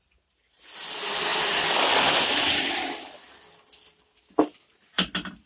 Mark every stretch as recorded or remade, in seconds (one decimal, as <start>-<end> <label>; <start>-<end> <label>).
0.0-5.5 recorded